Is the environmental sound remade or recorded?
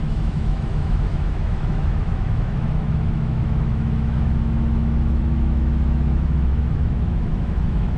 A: remade